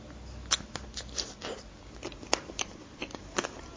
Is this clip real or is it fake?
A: real